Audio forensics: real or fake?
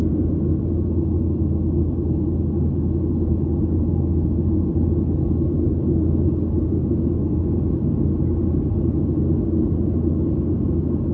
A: real